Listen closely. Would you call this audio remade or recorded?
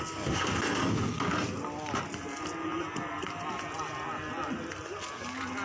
recorded